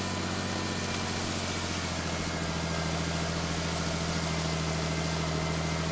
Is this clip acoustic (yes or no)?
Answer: yes